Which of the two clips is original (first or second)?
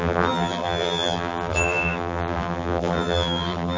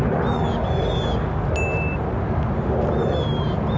second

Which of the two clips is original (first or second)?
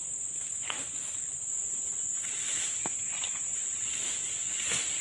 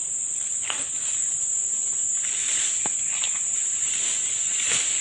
first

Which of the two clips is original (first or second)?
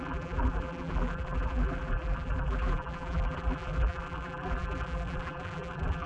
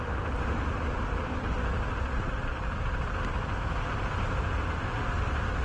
second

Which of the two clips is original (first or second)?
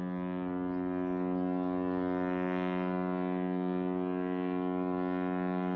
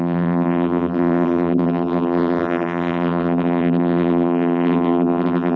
first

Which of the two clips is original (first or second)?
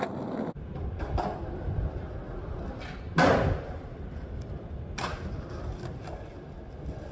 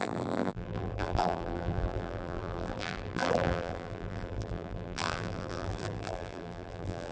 first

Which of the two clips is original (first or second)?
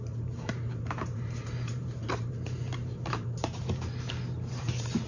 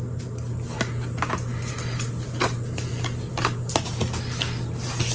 second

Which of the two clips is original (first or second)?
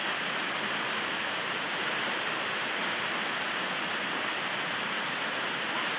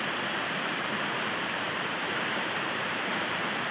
first